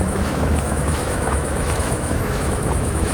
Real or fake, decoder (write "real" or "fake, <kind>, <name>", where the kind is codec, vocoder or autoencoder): fake, autoencoder, DAC-VAE